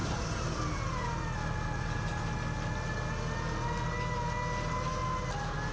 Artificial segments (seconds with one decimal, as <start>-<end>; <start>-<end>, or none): 0.0-1.2